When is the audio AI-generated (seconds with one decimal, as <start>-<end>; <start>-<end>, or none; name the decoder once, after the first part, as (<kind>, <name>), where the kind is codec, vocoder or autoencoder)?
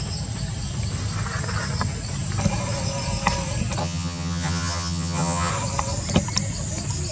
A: 3.8-5.5 (vocoder, HiFi-GAN)